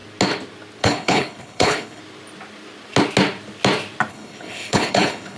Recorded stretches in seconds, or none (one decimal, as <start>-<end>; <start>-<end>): 0.0-0.8; 2.0-4.1